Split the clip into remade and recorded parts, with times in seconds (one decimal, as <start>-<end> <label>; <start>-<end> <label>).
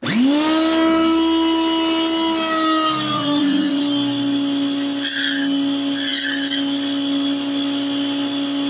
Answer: 0.0-3.1 recorded; 3.1-3.8 remade; 3.8-8.7 recorded